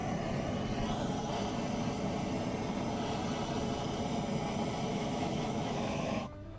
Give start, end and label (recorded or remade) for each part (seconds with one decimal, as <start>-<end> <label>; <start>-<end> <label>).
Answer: 0.0-4.9 recorded; 4.9-6.6 remade